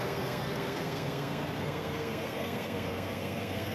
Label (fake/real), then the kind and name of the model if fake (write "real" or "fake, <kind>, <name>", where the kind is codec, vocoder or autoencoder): fake, codec, SNAC